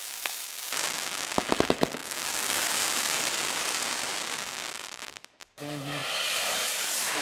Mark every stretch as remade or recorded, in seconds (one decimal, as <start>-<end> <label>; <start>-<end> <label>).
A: 0.0-7.2 remade